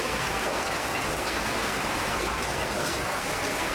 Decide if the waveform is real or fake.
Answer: fake